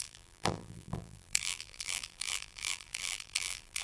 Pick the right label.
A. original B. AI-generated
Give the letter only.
B